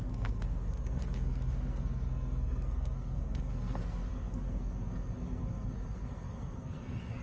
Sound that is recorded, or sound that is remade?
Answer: remade